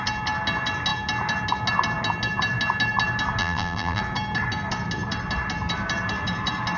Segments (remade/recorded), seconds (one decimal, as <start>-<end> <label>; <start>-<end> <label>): 0.0-3.4 recorded; 3.4-4.0 remade; 4.0-6.8 recorded